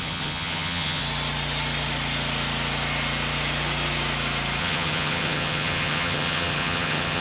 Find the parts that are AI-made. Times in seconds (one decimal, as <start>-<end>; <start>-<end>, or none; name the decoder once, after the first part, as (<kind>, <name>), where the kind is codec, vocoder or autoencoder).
0.0-1.0 (vocoder, HiFi-GAN); 4.6-7.2